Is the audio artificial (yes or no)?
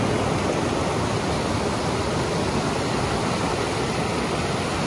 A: no